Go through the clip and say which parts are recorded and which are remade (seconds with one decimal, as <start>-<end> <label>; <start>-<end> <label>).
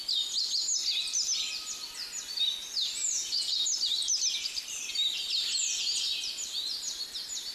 0.0-7.5 recorded